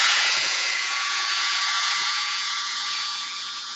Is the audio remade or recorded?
remade